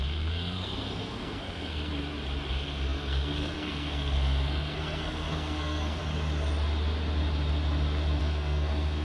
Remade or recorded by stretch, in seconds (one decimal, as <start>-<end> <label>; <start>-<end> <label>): 0.0-1.9 remade; 1.9-2.5 recorded; 2.5-6.0 remade; 6.0-8.2 recorded; 8.2-9.0 remade